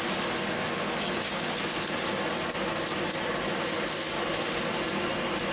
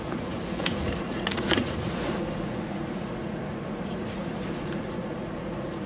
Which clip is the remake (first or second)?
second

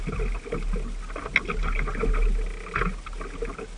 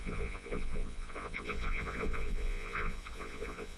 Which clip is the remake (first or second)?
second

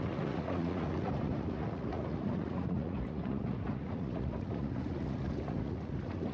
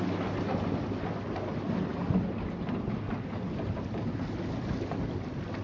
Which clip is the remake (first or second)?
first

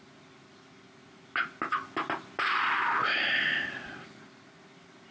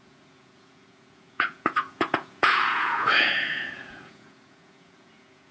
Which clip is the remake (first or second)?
second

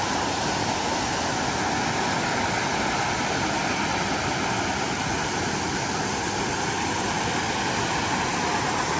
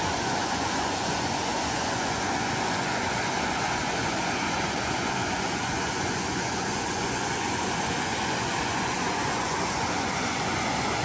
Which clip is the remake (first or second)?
second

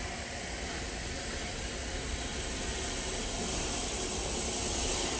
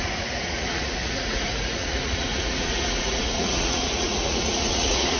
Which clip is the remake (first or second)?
second